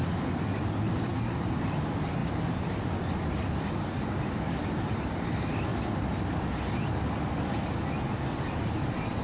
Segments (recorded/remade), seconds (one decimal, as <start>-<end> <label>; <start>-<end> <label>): 0.0-1.1 remade; 1.1-1.6 recorded; 1.6-2.2 remade; 2.2-3.3 recorded; 3.3-5.7 remade; 5.7-9.2 recorded